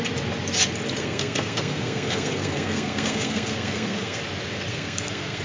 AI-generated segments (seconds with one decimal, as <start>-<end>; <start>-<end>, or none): 1.0-4.2; 4.7-5.4